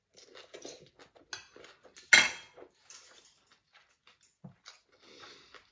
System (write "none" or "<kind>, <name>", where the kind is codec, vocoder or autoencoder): none